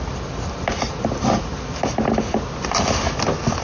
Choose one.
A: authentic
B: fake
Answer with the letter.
A